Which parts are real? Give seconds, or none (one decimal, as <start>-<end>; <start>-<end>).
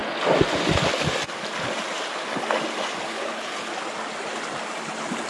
0.0-3.1; 3.7-5.3